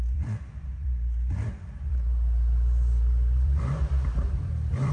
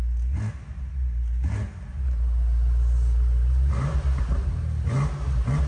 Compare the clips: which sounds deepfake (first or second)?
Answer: first